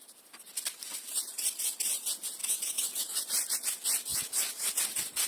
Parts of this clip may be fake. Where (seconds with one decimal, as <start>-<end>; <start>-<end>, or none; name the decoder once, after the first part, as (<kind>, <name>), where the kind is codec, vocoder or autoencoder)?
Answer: 2.4-3.2 (autoencoder, DAC-VAE); 4.1-4.7